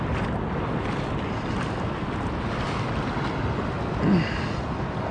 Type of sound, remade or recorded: recorded